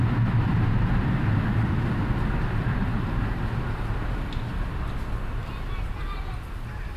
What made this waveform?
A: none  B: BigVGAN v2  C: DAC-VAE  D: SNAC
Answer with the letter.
A